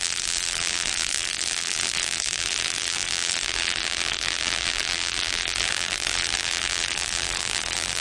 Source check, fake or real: fake